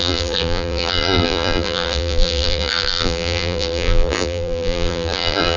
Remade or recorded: remade